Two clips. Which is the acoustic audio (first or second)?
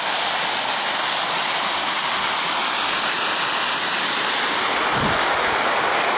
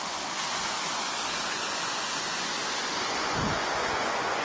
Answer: first